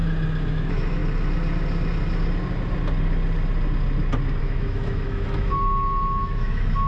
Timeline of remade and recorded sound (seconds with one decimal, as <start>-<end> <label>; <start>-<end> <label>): 0.0-0.5 recorded; 0.5-1.0 remade; 1.0-4.4 recorded; 4.4-6.9 remade